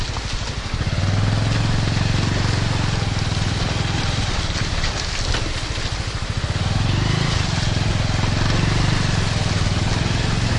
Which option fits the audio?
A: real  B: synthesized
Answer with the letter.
A